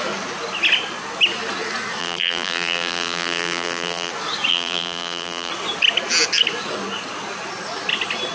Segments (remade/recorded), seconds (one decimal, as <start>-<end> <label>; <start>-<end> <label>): 0.0-2.0 recorded; 2.0-4.1 remade; 4.1-4.5 recorded; 4.5-5.5 remade; 5.5-8.3 recorded